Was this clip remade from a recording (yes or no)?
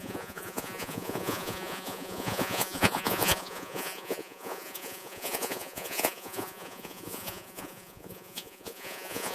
yes